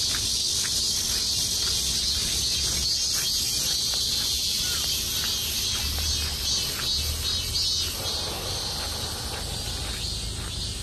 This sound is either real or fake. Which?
real